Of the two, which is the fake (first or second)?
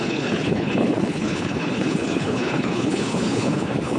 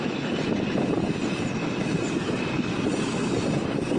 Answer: first